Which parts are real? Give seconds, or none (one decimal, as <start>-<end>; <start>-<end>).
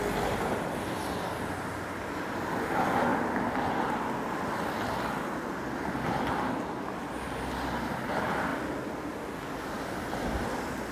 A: 0.0-10.9